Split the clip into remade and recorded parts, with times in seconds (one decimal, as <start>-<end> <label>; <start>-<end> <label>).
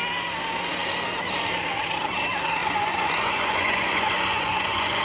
0.0-2.6 recorded; 2.6-5.0 remade